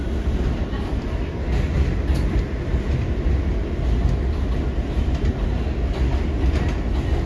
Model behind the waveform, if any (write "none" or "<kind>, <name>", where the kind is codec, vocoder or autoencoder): none